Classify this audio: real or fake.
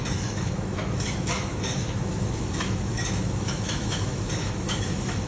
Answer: fake